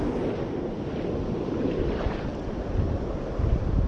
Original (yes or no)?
yes